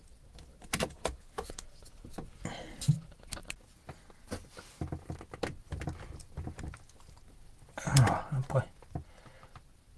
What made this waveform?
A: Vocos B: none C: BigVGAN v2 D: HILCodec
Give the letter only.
B